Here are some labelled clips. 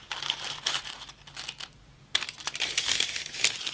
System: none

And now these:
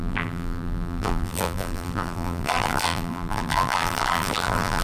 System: vocoder, BigVGAN v2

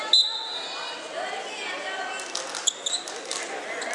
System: none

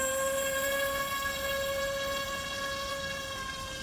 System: vocoder, BigVGAN v2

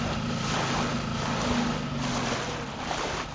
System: none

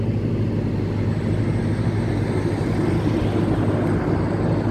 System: none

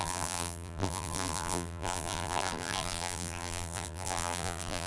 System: vocoder, BigVGAN v2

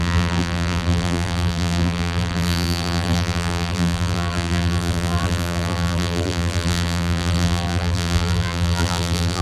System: vocoder, BigVGAN v2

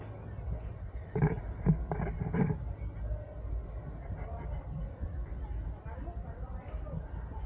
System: none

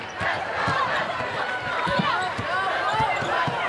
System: vocoder, BigVGAN v2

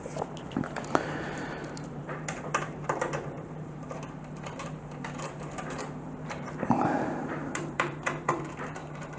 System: vocoder, BigVGAN v2